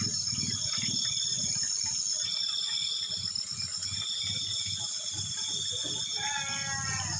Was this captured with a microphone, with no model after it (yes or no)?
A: yes